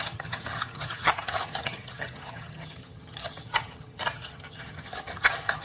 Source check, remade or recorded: remade